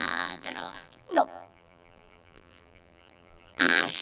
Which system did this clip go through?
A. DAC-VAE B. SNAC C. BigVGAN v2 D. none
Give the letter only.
C